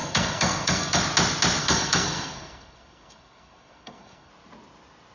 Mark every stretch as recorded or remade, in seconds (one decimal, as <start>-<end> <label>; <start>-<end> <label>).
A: 0.0-1.0 remade; 1.0-1.6 recorded; 1.6-4.3 remade; 4.3-5.1 recorded